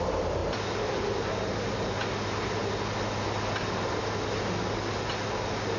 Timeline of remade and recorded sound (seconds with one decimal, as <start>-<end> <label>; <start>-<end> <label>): 0.0-5.8 recorded